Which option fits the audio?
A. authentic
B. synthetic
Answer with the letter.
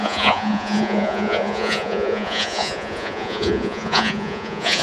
B